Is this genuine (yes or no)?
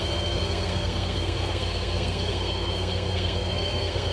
no